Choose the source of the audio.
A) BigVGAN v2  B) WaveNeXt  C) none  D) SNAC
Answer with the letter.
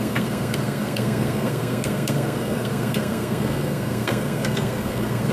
D